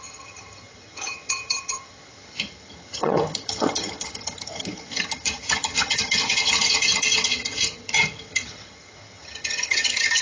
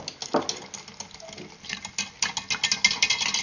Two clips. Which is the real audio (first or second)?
second